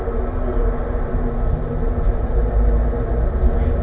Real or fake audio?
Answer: real